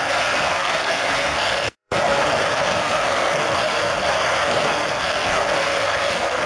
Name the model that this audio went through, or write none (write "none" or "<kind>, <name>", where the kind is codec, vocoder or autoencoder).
codec, SNAC